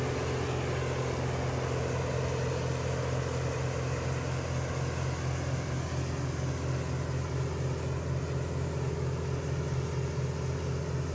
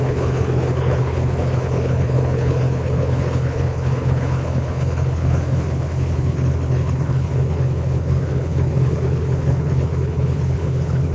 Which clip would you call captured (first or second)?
first